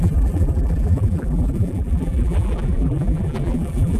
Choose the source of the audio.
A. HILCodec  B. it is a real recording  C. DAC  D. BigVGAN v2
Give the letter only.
D